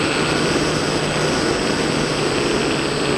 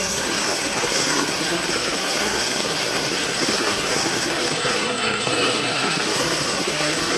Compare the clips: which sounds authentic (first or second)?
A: first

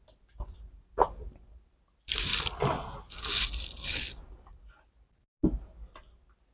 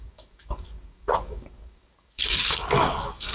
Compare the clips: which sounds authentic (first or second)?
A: first